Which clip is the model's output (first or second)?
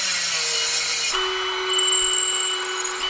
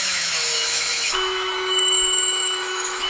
second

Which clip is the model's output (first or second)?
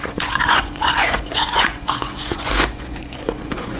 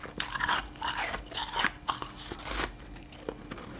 first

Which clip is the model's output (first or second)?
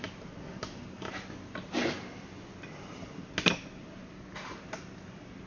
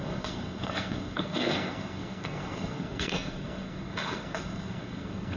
second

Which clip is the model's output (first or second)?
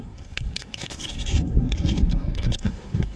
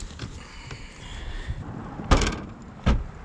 first